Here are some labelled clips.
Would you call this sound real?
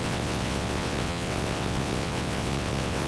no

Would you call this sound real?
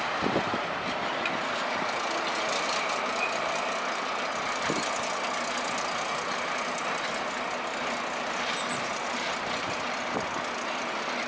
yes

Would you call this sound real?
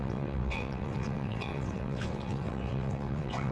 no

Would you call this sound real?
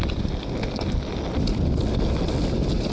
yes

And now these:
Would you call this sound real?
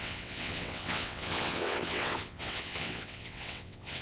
no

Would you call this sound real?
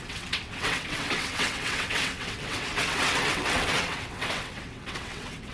no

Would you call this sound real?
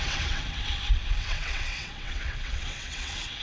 no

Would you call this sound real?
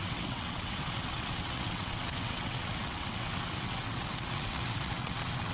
no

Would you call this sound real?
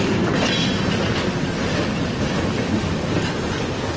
yes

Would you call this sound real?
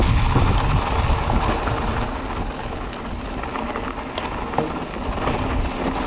yes